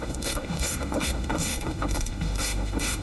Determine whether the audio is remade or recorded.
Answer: remade